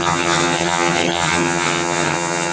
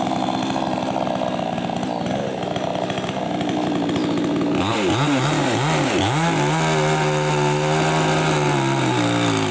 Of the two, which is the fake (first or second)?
first